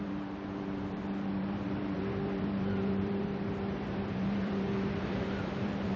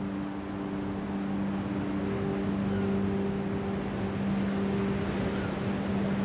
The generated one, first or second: first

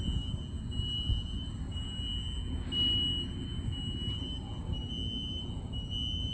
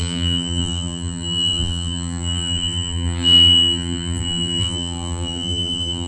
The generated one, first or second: second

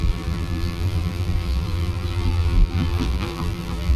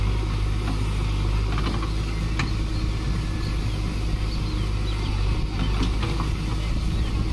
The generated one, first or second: first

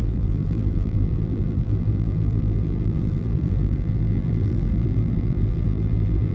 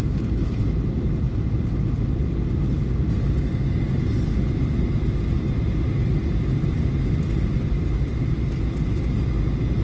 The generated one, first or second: first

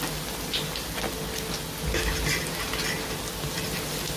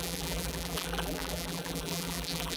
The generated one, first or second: second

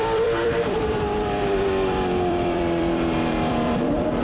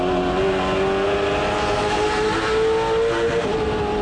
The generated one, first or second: first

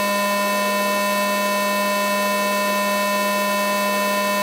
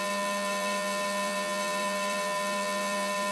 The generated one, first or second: second